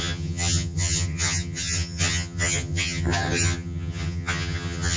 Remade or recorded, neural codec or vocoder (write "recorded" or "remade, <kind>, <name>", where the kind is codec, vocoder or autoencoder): remade, vocoder, HiFi-GAN